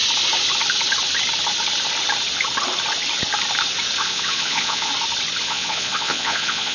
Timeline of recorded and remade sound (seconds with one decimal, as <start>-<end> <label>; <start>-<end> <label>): 0.0-4.0 recorded; 4.0-4.9 remade; 4.9-5.4 recorded; 5.4-6.7 remade